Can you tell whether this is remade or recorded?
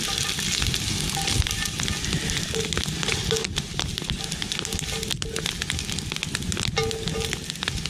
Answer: recorded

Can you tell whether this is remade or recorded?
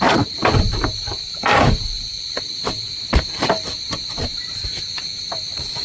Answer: remade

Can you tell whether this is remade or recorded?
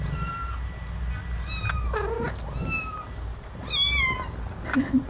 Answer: recorded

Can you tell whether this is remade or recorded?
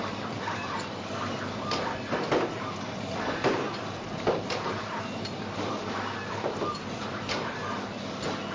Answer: remade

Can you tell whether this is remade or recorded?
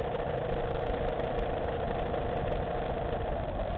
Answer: remade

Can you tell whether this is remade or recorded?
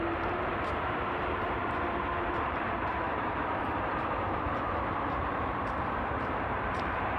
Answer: remade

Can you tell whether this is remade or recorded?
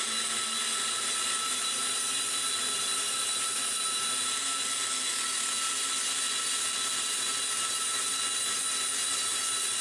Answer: recorded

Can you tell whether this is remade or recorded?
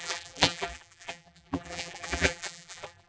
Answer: remade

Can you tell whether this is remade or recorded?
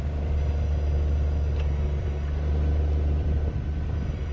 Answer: remade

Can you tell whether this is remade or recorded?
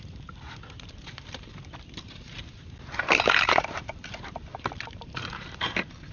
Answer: remade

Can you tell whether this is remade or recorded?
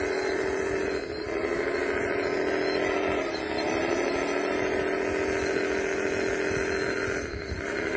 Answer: recorded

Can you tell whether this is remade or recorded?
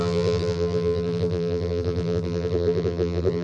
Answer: remade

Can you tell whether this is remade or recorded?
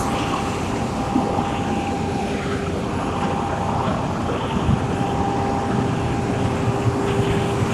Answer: recorded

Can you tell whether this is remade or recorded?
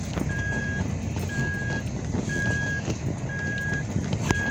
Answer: remade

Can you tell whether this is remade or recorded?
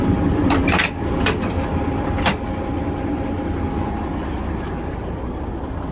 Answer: remade